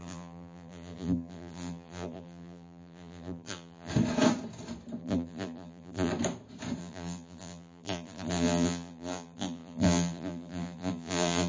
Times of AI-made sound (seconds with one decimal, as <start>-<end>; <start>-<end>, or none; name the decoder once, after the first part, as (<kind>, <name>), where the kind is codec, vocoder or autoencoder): 0.0-3.9 (vocoder, BigVGAN v2); 5.0-6.1; 6.8-11.5